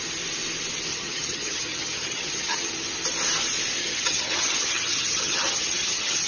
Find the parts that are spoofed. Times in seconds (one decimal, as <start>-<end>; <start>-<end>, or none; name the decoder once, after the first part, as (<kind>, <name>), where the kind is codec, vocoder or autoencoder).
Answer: 0.9-2.7 (vocoder, HiFi-GAN); 3.8-6.3